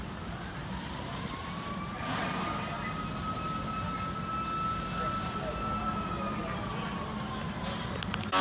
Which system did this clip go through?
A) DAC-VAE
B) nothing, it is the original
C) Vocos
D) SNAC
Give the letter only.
B